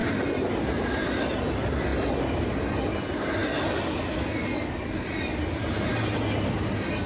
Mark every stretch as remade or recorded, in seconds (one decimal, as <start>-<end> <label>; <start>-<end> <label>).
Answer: 0.0-7.1 recorded